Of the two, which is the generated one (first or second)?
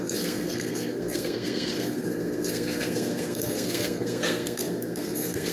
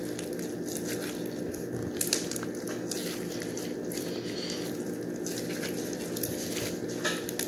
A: first